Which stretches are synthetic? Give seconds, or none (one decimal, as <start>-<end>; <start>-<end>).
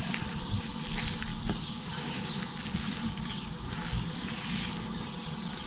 1.3-2.2; 2.6-4.6